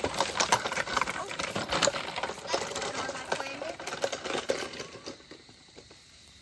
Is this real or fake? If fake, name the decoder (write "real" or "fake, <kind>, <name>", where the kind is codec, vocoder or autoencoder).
real